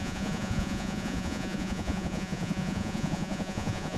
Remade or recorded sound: remade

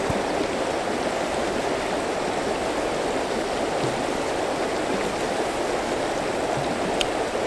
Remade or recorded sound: recorded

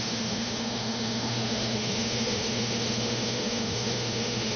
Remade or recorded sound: remade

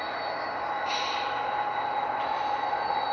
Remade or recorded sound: recorded